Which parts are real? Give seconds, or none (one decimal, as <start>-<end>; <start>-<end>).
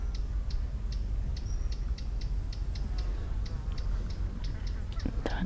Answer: 0.0-5.5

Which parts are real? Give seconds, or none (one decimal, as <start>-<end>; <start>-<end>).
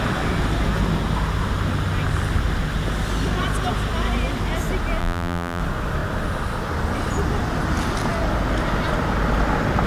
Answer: 0.0-5.0; 5.6-9.9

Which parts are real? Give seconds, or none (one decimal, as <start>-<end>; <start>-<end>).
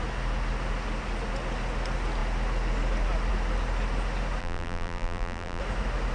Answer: 0.0-4.4; 5.6-6.1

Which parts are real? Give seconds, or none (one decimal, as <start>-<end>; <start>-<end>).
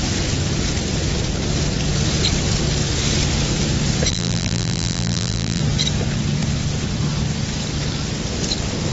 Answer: 0.0-4.1; 5.6-8.9